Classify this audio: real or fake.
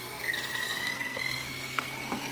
fake